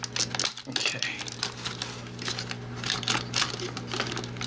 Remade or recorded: recorded